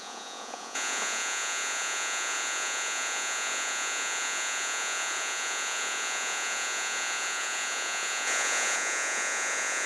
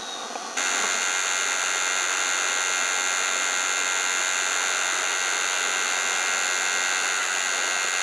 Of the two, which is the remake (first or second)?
first